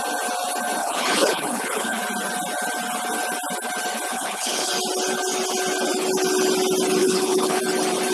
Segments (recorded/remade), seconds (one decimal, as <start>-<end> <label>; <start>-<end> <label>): 0.0-0.8 recorded; 0.8-2.0 remade; 2.0-4.1 recorded; 4.1-4.7 remade; 4.7-7.0 recorded; 7.0-7.6 remade; 7.6-8.1 recorded